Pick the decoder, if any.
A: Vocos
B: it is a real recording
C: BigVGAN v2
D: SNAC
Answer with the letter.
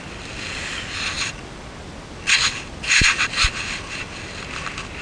B